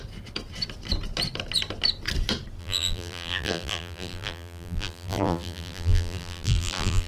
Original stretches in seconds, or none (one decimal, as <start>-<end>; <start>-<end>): 0.0-2.6